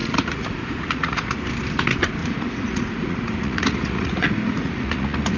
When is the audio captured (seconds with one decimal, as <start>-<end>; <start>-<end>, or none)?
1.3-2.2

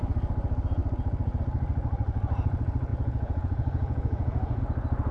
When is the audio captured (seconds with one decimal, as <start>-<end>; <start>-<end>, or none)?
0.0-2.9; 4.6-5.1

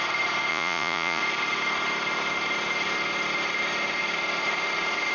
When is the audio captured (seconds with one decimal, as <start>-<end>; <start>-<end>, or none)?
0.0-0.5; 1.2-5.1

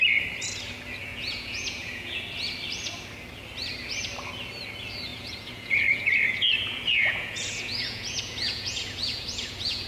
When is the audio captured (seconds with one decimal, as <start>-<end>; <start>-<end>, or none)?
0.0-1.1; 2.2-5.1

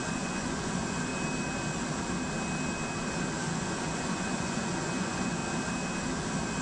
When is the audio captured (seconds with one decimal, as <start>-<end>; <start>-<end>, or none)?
1.1-3.4; 5.4-6.6

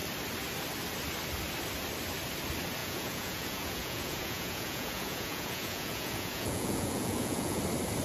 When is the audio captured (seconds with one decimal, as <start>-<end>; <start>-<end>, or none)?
0.0-2.8; 7.6-8.0

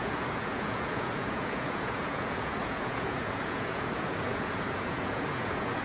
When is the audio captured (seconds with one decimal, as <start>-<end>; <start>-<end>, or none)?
none

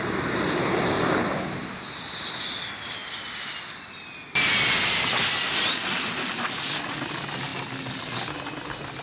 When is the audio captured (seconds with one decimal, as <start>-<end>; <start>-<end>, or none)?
0.0-9.0